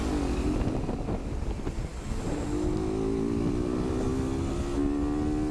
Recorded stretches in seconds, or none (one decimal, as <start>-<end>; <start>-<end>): 0.0-5.5

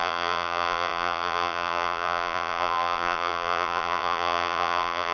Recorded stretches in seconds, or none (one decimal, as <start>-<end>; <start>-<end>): none

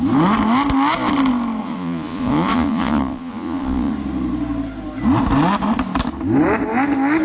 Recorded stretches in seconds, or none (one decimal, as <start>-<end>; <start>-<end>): 0.0-1.6; 3.9-7.2

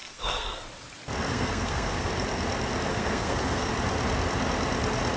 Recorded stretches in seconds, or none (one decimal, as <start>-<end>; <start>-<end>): 0.6-1.3; 2.1-2.9; 3.7-5.2

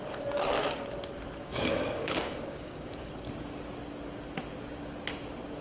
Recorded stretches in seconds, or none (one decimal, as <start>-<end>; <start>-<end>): 0.0-1.4; 3.1-5.6

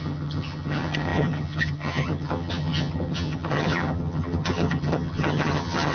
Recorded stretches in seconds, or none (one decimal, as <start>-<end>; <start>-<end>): none